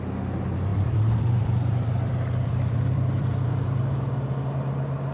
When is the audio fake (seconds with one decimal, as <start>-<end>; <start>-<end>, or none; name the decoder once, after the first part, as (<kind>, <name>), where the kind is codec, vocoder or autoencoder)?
0.7-3.8 (vocoder, BigVGAN v2)